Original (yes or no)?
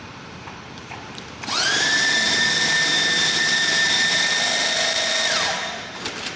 no